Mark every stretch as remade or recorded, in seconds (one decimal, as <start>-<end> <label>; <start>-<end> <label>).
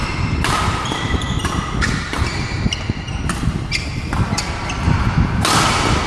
0.0-1.2 remade; 1.2-2.1 recorded; 2.1-4.0 remade; 4.0-6.1 recorded